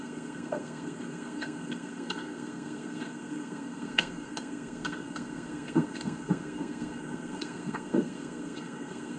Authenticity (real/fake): fake